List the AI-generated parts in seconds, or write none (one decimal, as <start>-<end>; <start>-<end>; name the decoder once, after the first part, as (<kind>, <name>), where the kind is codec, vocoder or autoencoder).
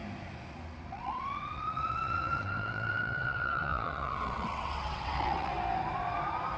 0.9-5.5 (vocoder, WaveNeXt)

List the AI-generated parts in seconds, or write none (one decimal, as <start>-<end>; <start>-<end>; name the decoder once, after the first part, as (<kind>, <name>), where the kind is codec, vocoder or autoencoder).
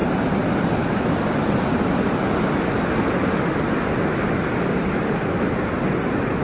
none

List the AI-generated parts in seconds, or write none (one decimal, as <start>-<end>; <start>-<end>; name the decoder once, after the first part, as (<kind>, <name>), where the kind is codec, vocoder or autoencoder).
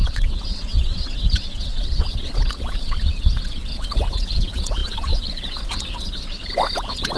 0.0-7.2 (vocoder, WaveNeXt)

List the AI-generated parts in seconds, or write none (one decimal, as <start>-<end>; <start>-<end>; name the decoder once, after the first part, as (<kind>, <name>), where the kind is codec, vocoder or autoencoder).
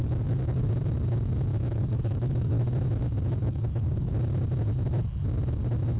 0.0-0.7 (codec, DAC); 1.5-2.6; 3.4-4.1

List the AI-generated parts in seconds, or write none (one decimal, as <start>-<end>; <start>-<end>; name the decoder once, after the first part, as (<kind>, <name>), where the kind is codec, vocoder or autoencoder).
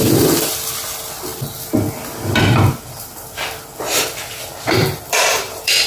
0.0-1.3 (vocoder, BigVGAN v2); 3.8-5.9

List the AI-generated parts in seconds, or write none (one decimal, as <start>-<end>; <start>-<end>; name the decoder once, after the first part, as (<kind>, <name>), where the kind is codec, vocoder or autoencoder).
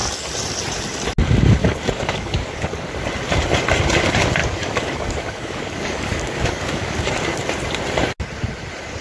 1.6-2.8 (codec, DAC); 4.4-7.1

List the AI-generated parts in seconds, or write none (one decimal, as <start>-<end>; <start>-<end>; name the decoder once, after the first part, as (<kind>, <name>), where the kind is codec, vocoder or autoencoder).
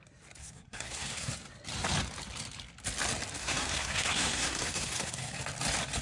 0.4-1.3 (codec, SNAC); 3.4-5.4